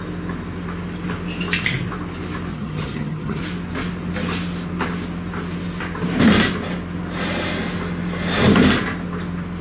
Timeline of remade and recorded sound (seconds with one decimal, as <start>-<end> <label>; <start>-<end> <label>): 0.0-2.5 recorded; 2.5-3.4 remade; 3.4-9.6 recorded